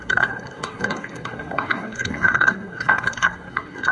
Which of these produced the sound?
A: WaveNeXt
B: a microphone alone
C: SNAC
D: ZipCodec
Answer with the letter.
C